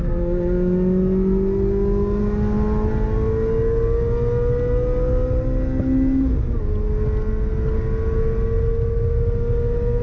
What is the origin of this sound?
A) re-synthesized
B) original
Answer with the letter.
B